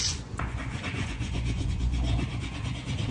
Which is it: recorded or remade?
remade